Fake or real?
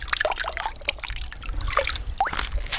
real